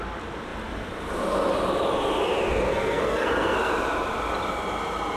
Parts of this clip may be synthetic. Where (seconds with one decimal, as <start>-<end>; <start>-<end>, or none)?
2.7-3.7